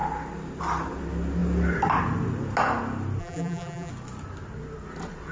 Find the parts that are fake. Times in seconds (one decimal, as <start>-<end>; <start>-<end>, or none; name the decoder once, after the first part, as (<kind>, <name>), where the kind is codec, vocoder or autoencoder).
3.2-3.9 (vocoder, BigVGAN v2)